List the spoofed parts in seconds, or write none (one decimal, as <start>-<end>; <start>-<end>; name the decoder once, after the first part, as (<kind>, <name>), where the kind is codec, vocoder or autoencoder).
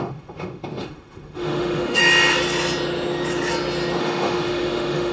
0.0-2.0 (autoencoder, DAC-VAE); 4.0-5.1